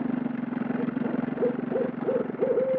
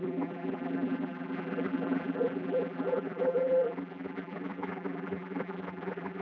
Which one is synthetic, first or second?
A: second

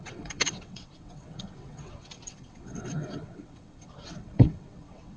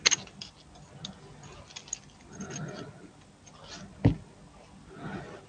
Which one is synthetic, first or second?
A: first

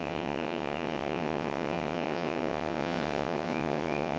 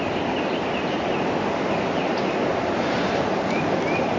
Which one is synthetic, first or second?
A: first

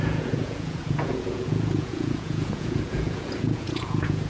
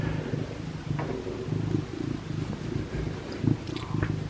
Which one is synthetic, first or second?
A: first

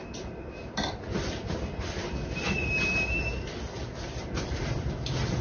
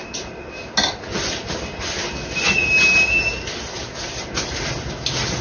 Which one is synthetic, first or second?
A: first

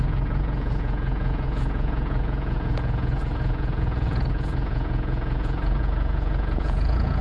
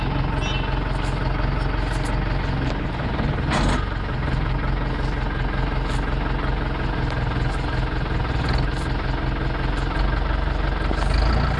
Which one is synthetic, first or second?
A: first